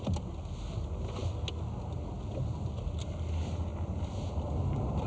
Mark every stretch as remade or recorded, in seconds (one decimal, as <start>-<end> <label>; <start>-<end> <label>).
0.0-5.1 recorded